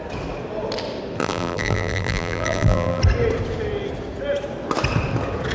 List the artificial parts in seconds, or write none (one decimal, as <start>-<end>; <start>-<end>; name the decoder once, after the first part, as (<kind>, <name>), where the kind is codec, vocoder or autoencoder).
1.2-3.0 (vocoder, BigVGAN v2)